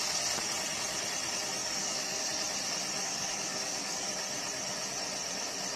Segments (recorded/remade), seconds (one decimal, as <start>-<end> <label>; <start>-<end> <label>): 0.0-1.6 recorded; 1.6-2.3 remade; 2.3-3.0 recorded; 3.0-4.1 remade; 4.1-5.8 recorded